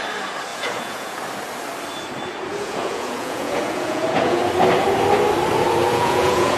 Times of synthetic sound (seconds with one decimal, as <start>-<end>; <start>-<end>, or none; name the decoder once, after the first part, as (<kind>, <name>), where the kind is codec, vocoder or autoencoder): 0.5-1.2 (vocoder, Vocos); 2.5-4.4; 5.9-6.6